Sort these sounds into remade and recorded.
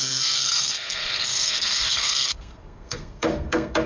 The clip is remade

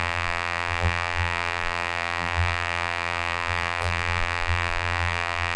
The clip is remade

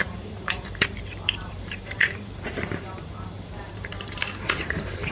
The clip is remade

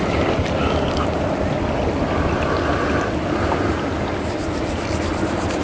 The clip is recorded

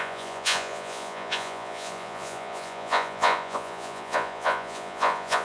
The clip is remade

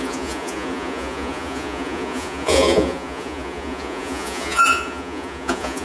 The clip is remade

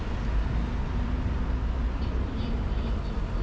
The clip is recorded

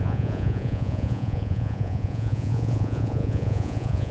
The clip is remade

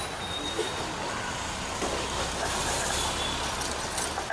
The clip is recorded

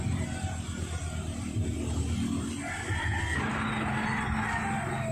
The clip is recorded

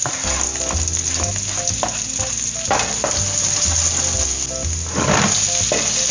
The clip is recorded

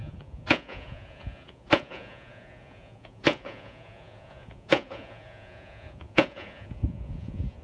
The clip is remade